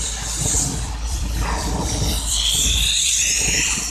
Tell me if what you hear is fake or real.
fake